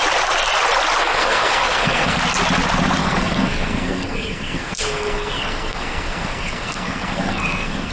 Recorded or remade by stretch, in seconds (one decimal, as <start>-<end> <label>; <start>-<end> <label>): 0.0-1.0 recorded; 1.0-2.2 remade; 2.2-3.0 recorded; 3.0-7.9 remade